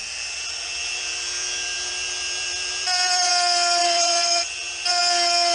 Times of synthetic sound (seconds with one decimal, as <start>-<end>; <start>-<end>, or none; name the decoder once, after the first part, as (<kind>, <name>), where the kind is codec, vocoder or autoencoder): 0.0-3.3 (vocoder, BigVGAN v2); 3.8-5.0